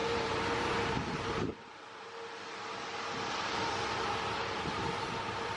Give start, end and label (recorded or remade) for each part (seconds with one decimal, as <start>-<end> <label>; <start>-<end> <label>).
0.0-1.5 remade; 1.5-4.6 recorded; 4.6-5.6 remade

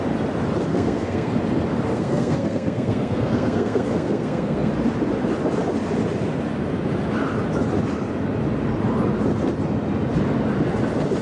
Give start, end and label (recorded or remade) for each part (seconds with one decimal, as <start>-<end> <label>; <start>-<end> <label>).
0.0-0.7 recorded; 0.7-1.3 remade; 1.3-1.9 recorded; 1.9-4.7 remade; 4.7-11.2 recorded

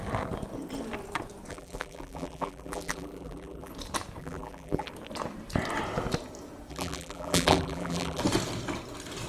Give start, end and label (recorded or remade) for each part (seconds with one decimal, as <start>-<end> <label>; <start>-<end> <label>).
0.0-1.5 recorded; 1.5-3.7 remade; 3.7-4.2 recorded; 4.2-4.9 remade; 4.9-6.7 recorded; 6.7-8.2 remade; 8.2-9.3 recorded

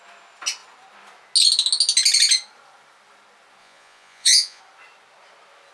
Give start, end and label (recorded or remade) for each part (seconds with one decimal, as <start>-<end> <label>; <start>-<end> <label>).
0.0-3.6 recorded; 3.6-4.6 remade; 4.6-5.7 recorded